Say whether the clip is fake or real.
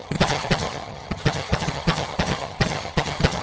fake